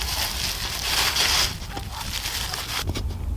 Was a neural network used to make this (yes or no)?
no